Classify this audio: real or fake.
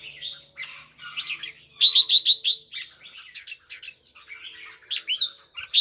real